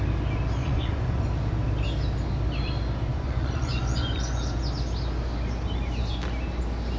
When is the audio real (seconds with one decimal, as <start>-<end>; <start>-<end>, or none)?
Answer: 0.0-0.6; 1.2-3.1; 4.4-7.0